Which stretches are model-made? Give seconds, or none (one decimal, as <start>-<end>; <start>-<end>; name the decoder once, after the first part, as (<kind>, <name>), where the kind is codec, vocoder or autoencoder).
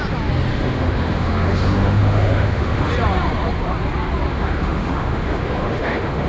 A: 0.5-2.9 (autoencoder, DAC-VAE); 4.3-6.3